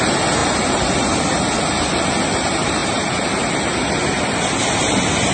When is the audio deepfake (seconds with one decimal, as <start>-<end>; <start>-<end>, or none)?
2.8-3.5